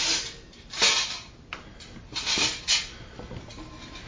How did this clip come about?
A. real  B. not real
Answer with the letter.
A